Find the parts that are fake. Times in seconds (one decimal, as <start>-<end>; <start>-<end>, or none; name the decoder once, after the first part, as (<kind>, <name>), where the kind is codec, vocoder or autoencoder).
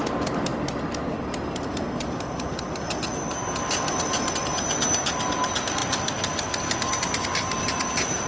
none